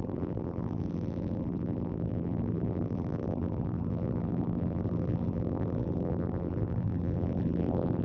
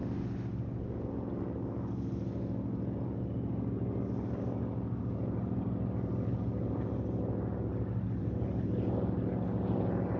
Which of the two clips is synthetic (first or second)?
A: first